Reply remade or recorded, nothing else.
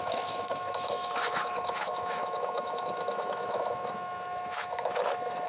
remade